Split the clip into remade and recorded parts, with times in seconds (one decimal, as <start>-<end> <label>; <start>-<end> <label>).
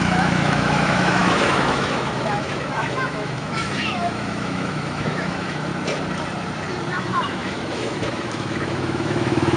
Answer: 0.0-5.7 remade; 5.7-6.9 recorded; 6.9-9.6 remade